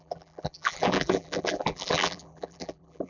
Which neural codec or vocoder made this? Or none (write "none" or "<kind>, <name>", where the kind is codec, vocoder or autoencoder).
vocoder, BigVGAN v2